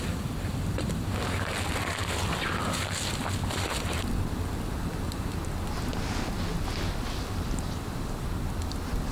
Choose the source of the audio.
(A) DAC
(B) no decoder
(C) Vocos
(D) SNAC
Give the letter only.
B